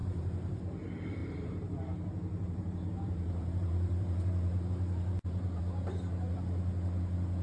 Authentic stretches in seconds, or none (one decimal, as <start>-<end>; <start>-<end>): 0.6-1.2; 5.6-7.4

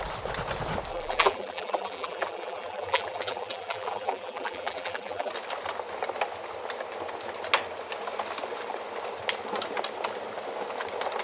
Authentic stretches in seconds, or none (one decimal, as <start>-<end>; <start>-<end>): 0.0-0.9; 5.3-11.2

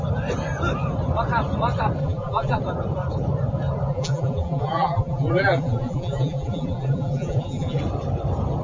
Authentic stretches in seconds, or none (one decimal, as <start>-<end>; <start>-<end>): 0.0-2.0; 2.6-3.9; 7.8-8.6

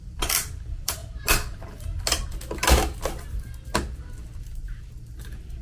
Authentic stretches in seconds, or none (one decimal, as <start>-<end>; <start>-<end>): 1.0-4.4